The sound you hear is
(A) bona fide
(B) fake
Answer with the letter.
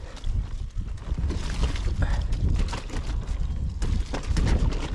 A